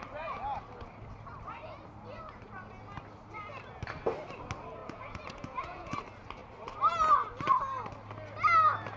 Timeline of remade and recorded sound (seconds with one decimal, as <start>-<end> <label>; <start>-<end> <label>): 0.0-4.8 recorded; 4.8-6.0 remade; 6.0-9.0 recorded